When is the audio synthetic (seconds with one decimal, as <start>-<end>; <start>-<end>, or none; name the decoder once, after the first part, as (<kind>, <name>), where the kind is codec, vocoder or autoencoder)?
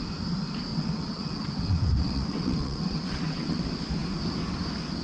0.7-3.6 (vocoder, WaveNeXt)